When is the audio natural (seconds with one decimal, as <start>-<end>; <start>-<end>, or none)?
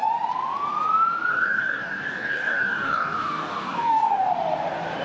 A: 0.0-1.3; 4.3-5.0